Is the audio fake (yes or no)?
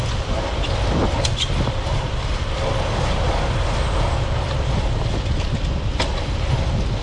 no